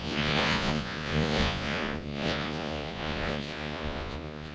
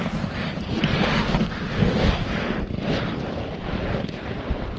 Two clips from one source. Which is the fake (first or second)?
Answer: first